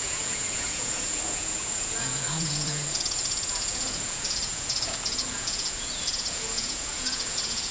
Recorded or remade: remade